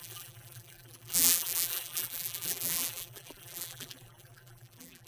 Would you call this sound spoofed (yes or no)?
yes